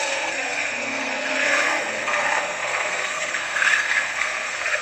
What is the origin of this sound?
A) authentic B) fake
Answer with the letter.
B